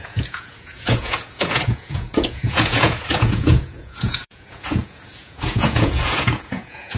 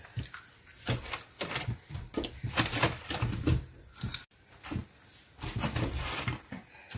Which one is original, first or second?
second